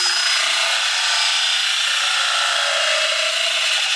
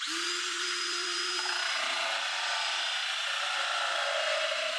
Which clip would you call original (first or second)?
first